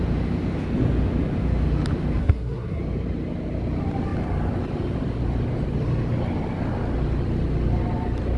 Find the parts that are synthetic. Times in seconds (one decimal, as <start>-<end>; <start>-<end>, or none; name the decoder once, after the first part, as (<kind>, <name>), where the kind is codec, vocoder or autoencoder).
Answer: 2.2-2.8 (codec, SNAC)

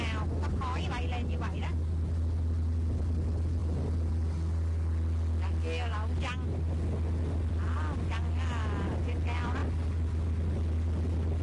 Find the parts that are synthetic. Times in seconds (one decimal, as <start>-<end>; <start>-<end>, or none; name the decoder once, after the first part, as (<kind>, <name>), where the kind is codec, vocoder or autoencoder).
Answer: none